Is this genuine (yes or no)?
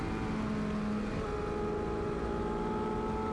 yes